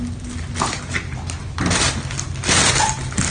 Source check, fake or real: real